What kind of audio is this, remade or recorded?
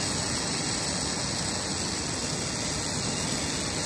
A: recorded